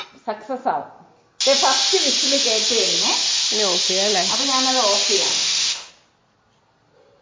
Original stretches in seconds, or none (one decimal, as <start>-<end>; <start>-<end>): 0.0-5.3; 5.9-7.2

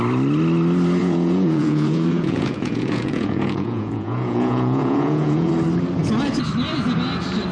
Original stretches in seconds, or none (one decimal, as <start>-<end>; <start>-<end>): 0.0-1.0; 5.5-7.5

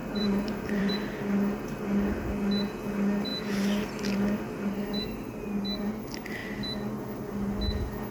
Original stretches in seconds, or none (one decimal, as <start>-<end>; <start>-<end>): 0.9-8.1

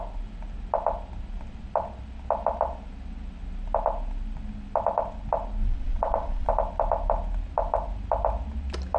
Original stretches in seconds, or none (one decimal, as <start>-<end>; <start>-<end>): 0.0-5.6; 6.5-9.0

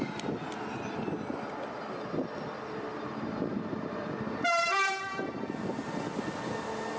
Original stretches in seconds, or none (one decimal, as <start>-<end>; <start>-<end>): 0.0-3.5; 5.3-7.0

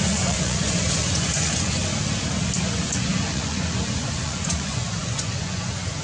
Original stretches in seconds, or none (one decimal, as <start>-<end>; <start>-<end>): 1.8-2.6